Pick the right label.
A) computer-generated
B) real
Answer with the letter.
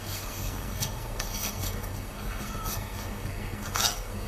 A